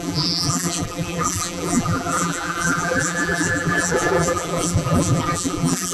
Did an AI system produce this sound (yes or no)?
yes